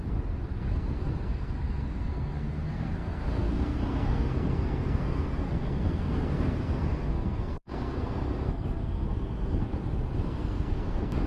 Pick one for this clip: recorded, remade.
remade